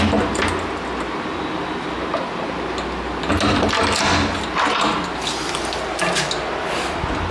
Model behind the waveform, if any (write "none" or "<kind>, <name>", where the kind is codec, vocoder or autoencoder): none